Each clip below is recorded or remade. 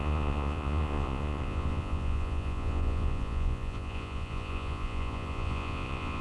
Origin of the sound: remade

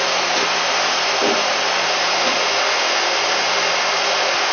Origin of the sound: recorded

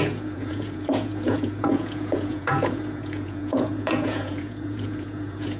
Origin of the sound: remade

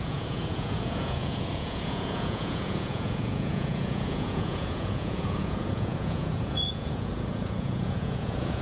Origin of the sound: remade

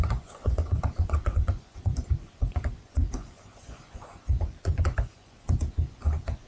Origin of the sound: remade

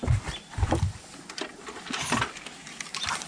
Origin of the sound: recorded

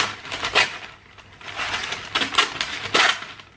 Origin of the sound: recorded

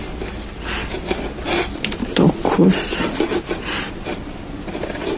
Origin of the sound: recorded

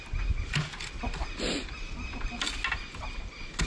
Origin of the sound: recorded